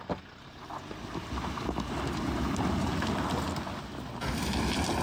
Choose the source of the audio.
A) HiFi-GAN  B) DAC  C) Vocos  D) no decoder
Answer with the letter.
D